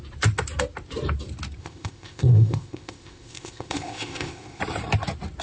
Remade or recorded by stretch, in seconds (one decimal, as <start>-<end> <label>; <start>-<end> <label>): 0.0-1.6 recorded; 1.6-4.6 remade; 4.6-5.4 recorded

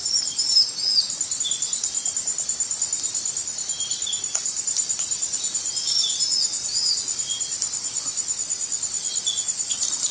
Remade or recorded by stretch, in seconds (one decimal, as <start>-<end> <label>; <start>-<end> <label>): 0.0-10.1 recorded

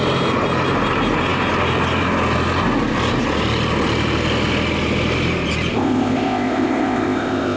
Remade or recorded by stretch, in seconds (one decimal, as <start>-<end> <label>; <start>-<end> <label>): 0.0-5.7 recorded; 5.7-7.6 remade

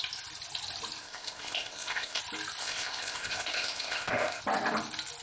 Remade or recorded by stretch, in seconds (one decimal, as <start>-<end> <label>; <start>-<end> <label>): 0.0-1.0 recorded; 1.0-2.2 remade; 2.2-2.6 recorded; 2.6-4.4 remade; 4.4-5.2 recorded